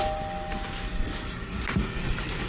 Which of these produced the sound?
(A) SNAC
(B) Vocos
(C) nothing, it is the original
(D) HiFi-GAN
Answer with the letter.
C